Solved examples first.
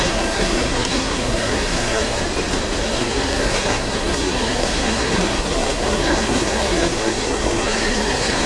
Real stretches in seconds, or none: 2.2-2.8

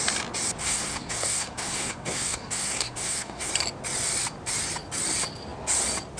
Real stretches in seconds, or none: 0.0-0.6; 3.5-6.2

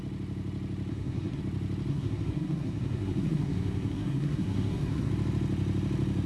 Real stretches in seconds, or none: 0.0-0.9; 1.4-1.9; 5.1-6.3

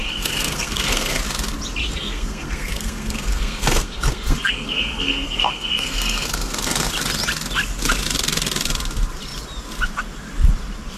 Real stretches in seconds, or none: 1.2-1.8; 6.9-11.0

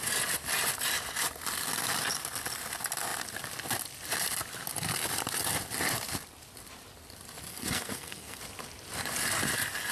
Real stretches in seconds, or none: 0.0-7.5; 8.4-9.9

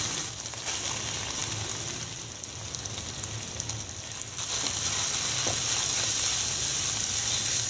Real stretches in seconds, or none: 0.0-7.7

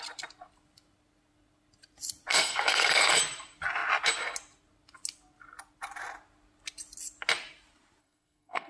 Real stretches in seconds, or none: 0.0-2.3; 3.2-8.0